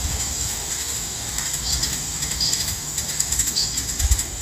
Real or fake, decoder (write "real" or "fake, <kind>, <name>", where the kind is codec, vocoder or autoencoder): fake, codec, DAC